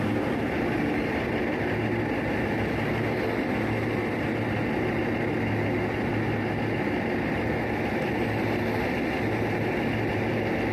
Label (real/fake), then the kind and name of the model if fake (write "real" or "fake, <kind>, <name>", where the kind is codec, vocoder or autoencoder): real